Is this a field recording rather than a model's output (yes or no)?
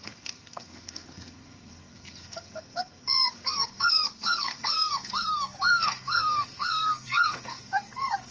no